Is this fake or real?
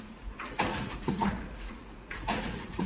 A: fake